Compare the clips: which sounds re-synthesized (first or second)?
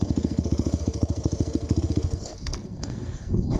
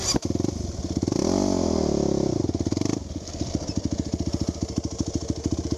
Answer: first